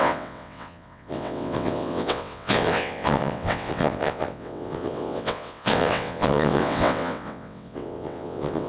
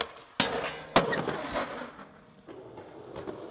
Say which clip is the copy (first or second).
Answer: first